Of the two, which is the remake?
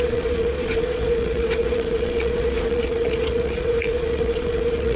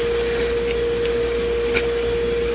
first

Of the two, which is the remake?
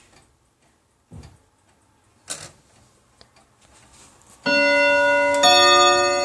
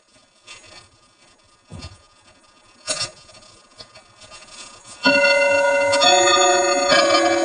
second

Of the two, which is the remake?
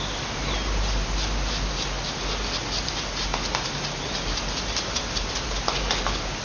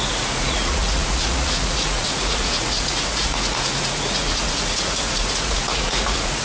second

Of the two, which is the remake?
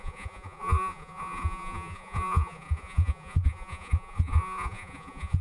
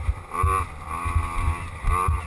first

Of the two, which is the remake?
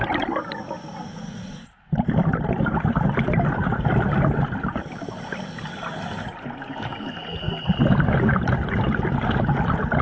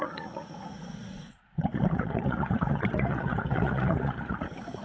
second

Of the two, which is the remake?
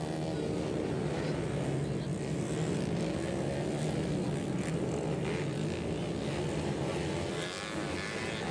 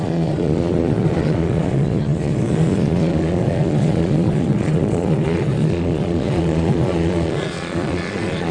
second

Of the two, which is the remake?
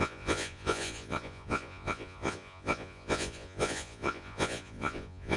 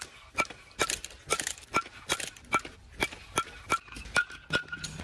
first